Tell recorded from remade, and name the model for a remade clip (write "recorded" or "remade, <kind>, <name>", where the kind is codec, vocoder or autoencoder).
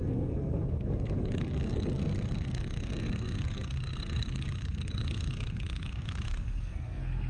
remade, codec, SNAC